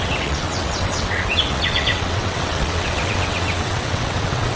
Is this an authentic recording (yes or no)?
no